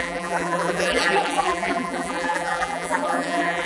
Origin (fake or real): fake